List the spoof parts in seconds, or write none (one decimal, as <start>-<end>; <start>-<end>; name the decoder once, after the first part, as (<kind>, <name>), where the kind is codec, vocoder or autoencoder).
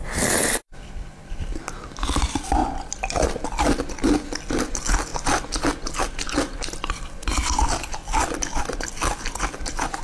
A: 0.0-2.6 (vocoder, BigVGAN v2); 4.6-5.1; 6.8-8.0; 8.6-10.0